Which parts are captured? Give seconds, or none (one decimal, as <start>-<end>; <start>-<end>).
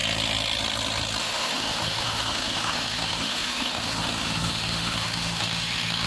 0.0-1.2